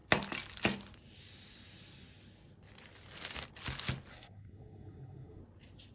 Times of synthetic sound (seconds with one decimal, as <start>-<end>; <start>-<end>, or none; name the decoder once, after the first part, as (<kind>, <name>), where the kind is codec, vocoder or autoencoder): 4.1-5.4 (codec, SNAC)